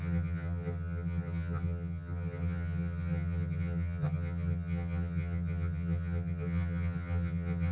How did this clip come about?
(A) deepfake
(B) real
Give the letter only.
A